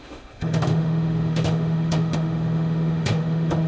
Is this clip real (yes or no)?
no